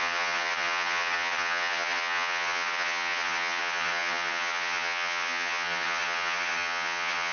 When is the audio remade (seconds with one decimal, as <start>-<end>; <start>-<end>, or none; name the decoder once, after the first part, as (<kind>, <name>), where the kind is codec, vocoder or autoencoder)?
0.0-7.3 (vocoder, HiFi-GAN)